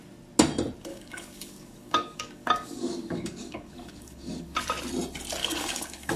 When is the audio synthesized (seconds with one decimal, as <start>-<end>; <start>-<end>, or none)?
0.9-4.6; 5.4-6.2